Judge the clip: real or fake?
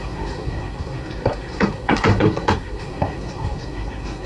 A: fake